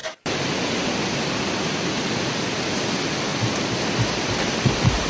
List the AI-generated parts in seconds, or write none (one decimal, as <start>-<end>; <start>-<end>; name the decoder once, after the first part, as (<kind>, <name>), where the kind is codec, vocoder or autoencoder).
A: none

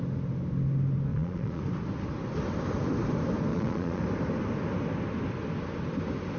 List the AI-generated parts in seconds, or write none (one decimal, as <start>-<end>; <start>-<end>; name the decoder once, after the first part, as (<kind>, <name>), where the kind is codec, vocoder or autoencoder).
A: 1.1-1.6 (vocoder, Vocos); 3.5-4.0